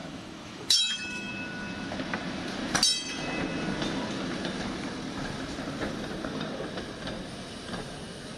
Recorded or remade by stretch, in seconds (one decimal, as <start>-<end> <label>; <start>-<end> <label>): 0.0-1.3 remade; 1.3-8.4 recorded